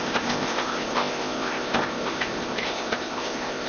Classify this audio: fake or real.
fake